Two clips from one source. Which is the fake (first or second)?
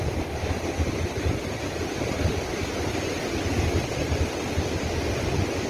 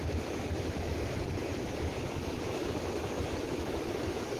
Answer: second